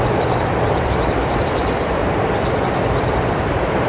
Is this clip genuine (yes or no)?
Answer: no